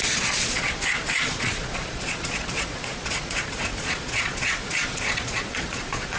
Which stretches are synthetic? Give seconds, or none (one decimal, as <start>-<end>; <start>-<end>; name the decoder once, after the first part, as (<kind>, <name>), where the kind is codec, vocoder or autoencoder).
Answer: 0.0-6.2 (vocoder, Vocos)